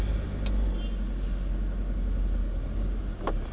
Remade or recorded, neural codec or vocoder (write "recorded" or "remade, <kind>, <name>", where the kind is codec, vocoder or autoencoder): recorded